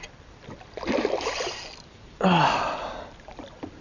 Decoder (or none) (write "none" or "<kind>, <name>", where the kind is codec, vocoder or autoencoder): none